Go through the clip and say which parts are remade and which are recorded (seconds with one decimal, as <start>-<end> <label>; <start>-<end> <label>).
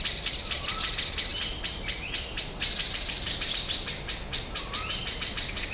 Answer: 0.0-5.7 recorded